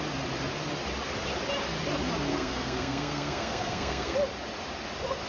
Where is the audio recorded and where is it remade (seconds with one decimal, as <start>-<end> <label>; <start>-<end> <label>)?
0.0-2.3 recorded; 2.3-4.2 remade; 4.2-5.3 recorded